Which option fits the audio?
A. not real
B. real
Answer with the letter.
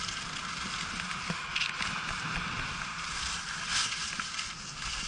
B